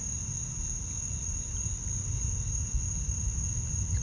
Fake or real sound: real